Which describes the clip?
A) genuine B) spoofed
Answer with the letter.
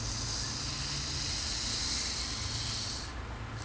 A